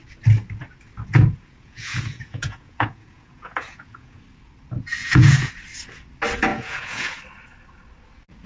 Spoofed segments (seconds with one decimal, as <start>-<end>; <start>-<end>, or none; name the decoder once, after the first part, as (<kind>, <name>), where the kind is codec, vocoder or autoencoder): 1.1-4.2 (vocoder, Vocos); 5.0-5.5; 6.5-7.2